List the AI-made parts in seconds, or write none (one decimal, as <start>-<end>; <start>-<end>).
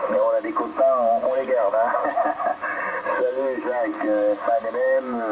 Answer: 0.0-0.7; 3.0-5.3